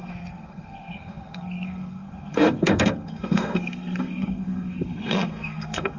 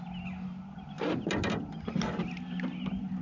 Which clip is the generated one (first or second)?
first